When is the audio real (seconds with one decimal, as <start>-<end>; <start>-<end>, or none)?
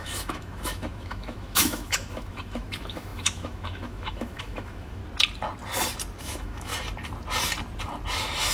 5.0-6.2; 6.7-8.5